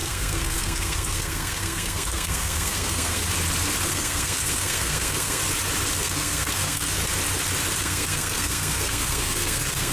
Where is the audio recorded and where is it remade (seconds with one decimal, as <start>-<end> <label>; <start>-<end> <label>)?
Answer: 0.0-3.2 remade; 3.2-3.9 recorded; 3.9-5.4 remade; 5.4-6.0 recorded; 6.0-7.0 remade; 7.0-7.8 recorded; 7.8-9.9 remade